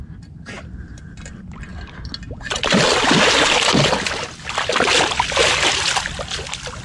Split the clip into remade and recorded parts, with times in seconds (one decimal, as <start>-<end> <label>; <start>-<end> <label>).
0.0-6.8 recorded